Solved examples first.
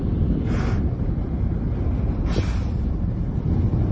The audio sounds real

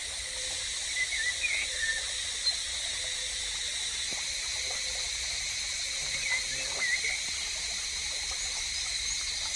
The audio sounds real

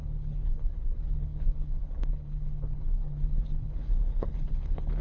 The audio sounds fake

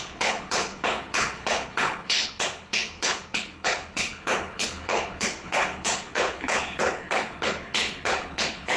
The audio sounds fake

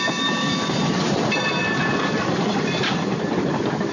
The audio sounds real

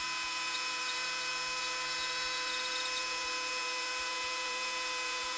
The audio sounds fake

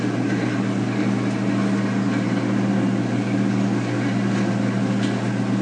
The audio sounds real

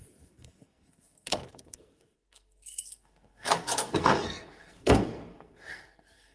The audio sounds fake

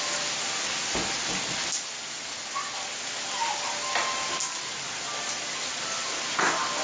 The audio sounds real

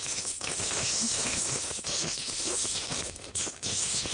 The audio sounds fake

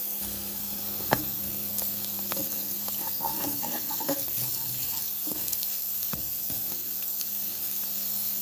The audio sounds fake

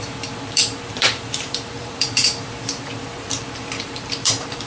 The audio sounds fake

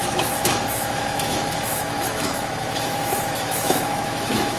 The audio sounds fake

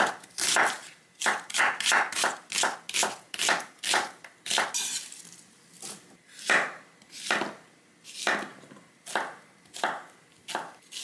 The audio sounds real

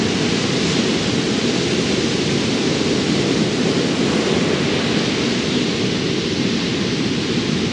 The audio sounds real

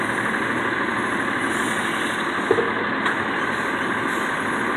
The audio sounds real